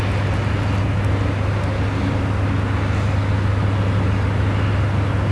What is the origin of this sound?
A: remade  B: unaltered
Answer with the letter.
B